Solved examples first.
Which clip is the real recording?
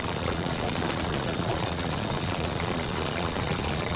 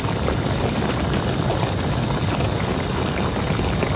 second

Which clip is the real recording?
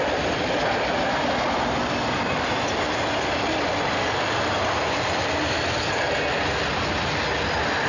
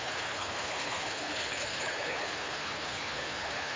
first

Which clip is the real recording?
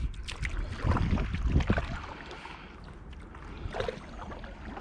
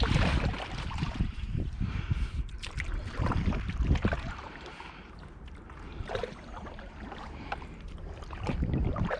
first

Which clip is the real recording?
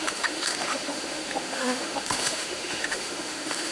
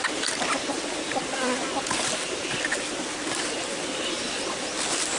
second